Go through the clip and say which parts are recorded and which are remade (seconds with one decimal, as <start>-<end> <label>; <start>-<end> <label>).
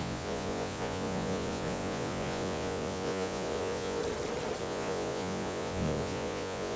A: 0.0-4.0 remade; 4.0-4.6 recorded; 4.6-6.8 remade